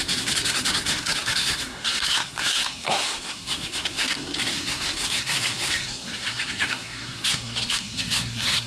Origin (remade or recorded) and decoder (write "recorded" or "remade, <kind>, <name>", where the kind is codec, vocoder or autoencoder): remade, codec, SNAC